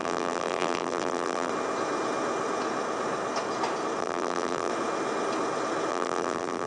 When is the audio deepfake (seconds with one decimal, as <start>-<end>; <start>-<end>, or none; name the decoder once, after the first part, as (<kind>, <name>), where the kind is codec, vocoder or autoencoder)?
0.0-1.5 (vocoder, BigVGAN v2); 4.0-4.7; 5.9-6.7